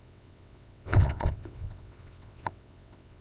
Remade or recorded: remade